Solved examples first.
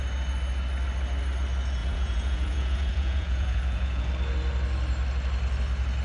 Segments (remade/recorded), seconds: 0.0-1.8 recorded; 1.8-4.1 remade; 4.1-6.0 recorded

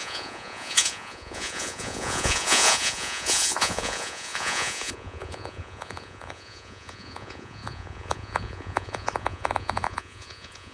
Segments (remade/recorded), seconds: 0.0-10.7 remade

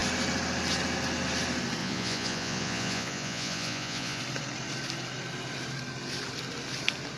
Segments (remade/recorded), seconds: 0.0-1.8 recorded; 1.8-4.2 remade; 4.2-7.2 recorded

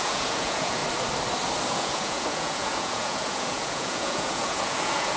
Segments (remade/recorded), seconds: 0.0-0.8 remade; 0.8-1.7 recorded; 1.7-5.2 remade